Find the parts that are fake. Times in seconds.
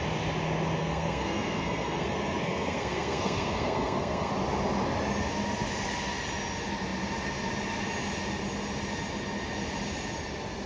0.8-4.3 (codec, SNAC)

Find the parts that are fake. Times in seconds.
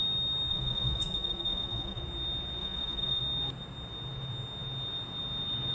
0.5-2.0 (vocoder, Vocos); 2.6-3.2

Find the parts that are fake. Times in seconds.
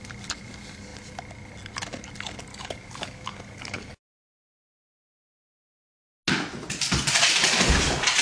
2.5-4.8 (codec, DAC)